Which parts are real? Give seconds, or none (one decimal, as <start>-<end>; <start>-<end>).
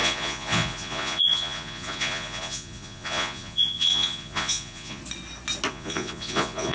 5.0-5.7